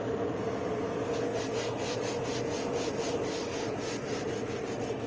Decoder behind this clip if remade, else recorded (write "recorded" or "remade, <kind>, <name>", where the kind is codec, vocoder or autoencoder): recorded